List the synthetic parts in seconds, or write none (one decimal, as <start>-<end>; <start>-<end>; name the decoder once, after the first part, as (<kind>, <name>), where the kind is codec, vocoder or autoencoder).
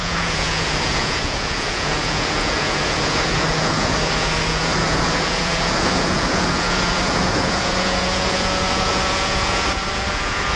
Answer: 0.0-10.6 (vocoder, Vocos)